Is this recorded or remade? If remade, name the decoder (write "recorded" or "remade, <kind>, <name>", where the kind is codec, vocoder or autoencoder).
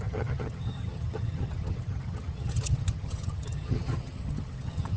remade, vocoder, HiFi-GAN